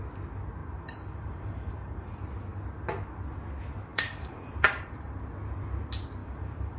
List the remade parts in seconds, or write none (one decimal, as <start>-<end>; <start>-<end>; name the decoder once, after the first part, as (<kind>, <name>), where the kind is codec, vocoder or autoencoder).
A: 0.6-2.1 (vocoder, BigVGAN v2); 3.9-5.3; 6.2-6.8